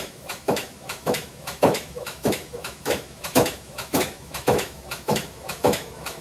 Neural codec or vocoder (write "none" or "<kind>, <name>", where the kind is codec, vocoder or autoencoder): autoencoder, DAC-VAE